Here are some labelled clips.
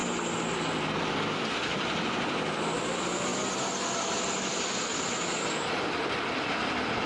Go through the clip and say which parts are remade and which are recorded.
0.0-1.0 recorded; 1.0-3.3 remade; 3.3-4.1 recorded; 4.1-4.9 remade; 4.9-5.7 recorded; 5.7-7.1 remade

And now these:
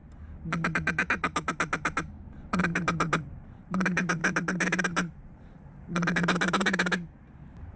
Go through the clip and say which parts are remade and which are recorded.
0.0-2.6 recorded; 2.6-7.8 remade

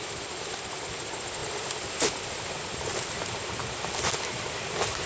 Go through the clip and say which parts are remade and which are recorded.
0.0-5.1 recorded

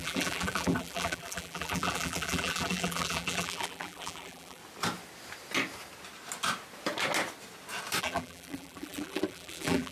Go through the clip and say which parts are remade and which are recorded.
0.0-4.6 remade; 4.6-8.0 recorded; 8.0-9.9 remade

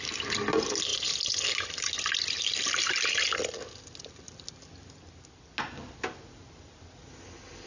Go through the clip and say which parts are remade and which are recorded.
0.0-7.7 recorded